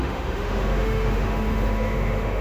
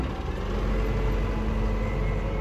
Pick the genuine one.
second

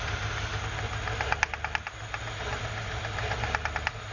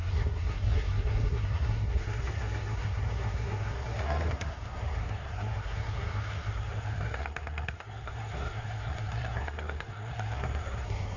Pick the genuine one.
first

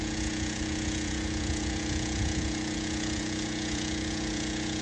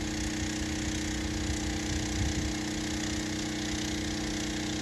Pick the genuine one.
second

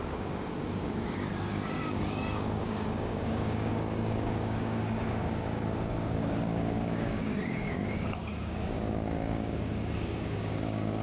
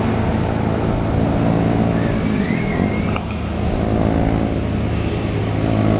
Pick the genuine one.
second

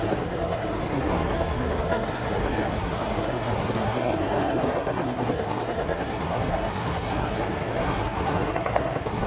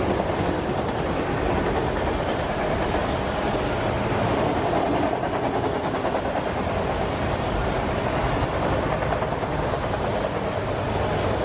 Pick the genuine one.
second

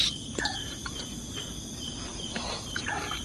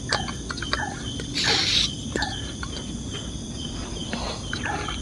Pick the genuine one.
first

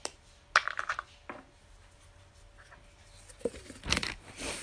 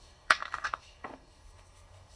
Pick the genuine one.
first